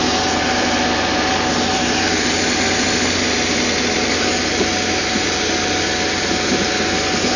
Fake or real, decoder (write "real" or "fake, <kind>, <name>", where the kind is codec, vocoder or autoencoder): real